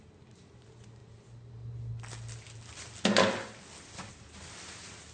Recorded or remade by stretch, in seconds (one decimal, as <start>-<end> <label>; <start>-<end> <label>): 0.0-5.1 recorded